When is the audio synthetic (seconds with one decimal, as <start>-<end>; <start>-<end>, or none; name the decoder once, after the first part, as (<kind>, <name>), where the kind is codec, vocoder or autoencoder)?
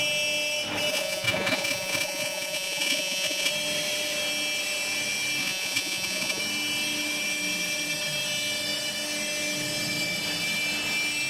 0.9-3.5 (vocoder, Vocos); 5.4-6.4